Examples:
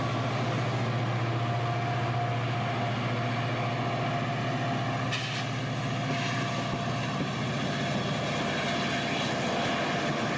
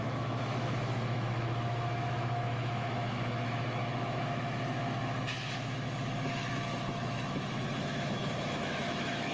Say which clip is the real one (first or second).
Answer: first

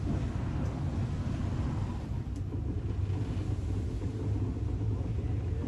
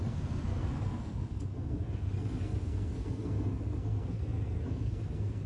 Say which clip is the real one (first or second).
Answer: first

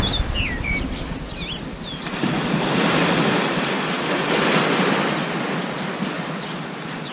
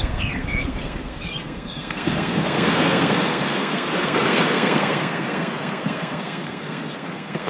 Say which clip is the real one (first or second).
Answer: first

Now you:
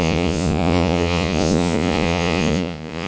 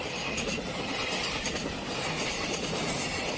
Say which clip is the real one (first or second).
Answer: second